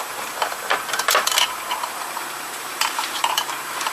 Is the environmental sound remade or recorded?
remade